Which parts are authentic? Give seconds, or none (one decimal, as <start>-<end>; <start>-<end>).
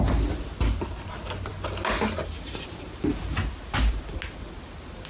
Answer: 0.0-5.1